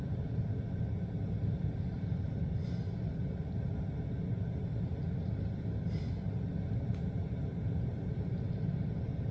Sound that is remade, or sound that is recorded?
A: recorded